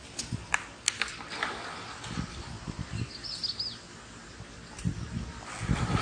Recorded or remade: recorded